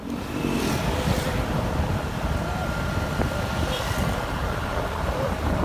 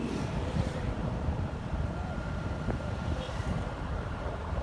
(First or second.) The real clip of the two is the first